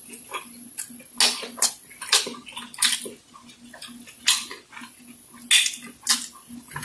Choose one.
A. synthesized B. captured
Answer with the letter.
B